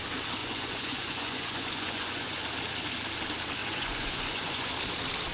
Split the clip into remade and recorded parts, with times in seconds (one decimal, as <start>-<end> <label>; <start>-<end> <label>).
0.0-0.4 recorded; 0.4-2.4 remade; 2.4-3.6 recorded; 3.6-4.7 remade; 4.7-5.3 recorded